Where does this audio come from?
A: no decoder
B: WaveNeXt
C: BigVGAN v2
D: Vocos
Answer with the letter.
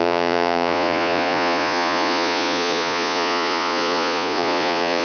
D